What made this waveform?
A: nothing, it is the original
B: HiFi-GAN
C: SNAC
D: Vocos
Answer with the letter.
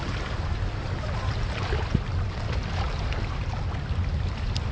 A